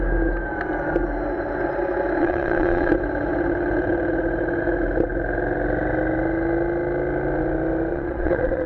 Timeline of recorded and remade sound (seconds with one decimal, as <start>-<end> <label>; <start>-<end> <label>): 0.0-2.2 recorded; 2.2-2.9 remade; 2.9-7.9 recorded; 7.9-8.7 remade